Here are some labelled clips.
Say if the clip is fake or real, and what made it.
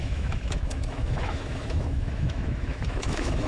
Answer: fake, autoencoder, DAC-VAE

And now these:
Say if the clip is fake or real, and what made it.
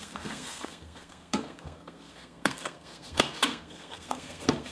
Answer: fake, codec, SNAC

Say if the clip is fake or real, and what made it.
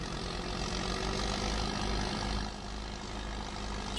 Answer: real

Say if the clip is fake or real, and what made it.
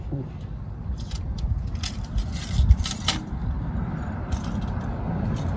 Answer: real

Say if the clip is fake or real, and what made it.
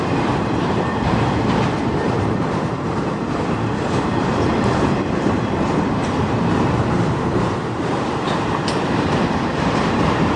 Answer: fake, vocoder, BigVGAN v2